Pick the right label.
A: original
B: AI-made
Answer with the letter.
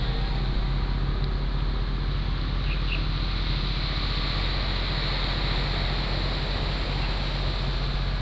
A